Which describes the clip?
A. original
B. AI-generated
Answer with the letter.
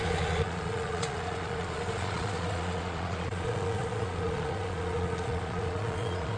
B